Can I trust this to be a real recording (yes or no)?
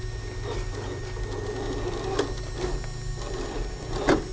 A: yes